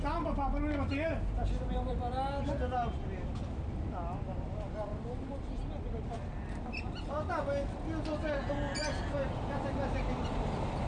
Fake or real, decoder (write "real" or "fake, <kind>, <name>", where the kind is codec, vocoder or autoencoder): real